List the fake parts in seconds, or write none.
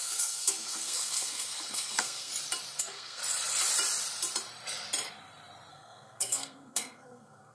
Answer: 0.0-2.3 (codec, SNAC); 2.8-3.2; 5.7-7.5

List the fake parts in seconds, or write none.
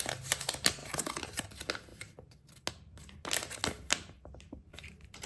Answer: 0.8-1.4 (vocoder, BigVGAN v2); 4.7-5.3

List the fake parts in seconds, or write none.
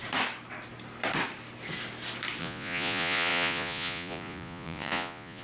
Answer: 2.4-5.4 (vocoder, Vocos)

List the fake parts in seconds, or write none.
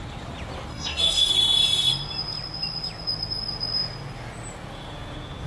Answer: 0.7-1.3 (codec, SNAC)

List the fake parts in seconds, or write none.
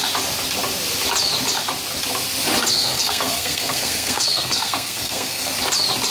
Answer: 2.7-5.5 (codec, SNAC)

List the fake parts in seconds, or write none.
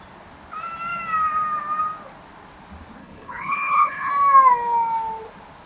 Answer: 3.0-4.1 (codec, HILCodec)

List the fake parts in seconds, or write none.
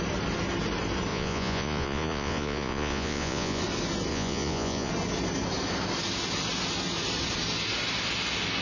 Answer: 1.1-3.6 (vocoder, Vocos); 4.1-4.9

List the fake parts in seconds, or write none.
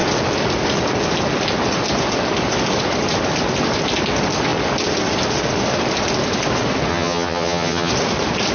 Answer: 6.9-7.9 (vocoder, HiFi-GAN)